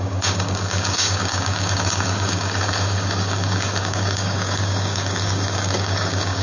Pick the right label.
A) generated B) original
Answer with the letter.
A